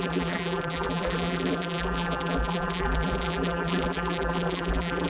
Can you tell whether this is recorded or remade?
remade